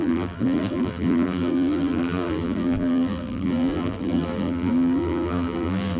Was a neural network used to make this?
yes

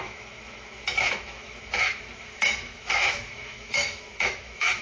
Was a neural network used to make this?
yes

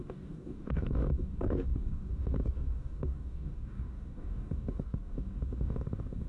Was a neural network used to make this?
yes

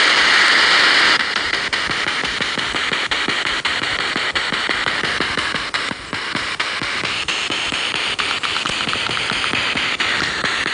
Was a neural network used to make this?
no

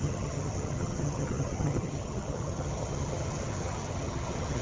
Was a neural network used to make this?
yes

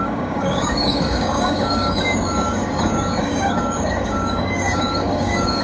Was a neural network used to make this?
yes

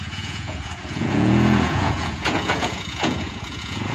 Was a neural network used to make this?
yes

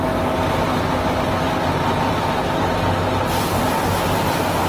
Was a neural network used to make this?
no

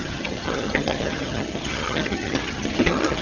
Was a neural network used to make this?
yes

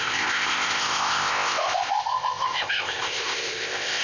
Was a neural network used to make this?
yes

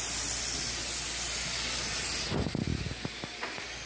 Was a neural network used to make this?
no